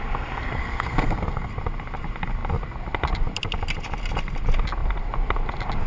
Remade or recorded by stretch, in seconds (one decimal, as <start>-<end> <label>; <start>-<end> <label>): 0.0-0.6 recorded; 0.6-1.5 remade; 1.5-5.9 recorded